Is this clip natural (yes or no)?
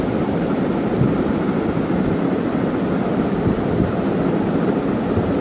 yes